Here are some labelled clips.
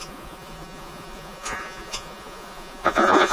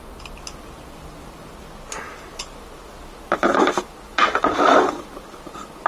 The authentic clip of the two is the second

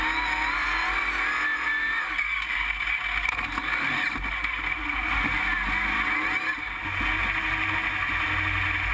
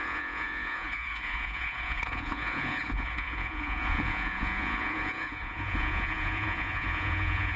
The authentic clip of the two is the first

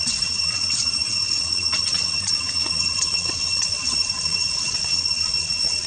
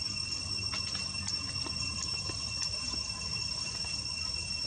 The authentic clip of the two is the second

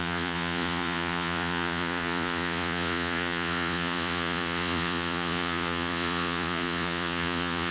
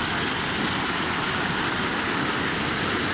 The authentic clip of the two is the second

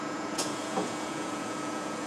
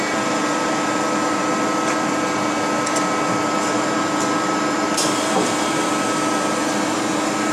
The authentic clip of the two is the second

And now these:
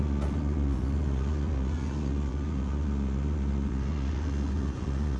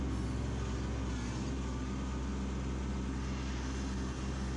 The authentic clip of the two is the second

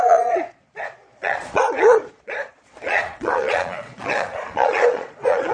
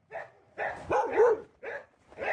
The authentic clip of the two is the second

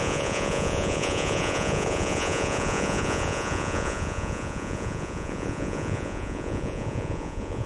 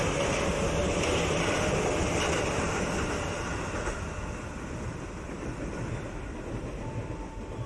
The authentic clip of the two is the second